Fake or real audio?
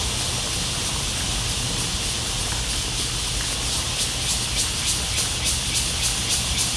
real